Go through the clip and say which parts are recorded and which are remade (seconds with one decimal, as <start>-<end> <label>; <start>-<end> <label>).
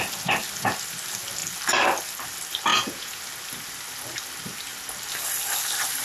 0.0-2.7 recorded; 2.7-3.2 remade; 3.2-6.0 recorded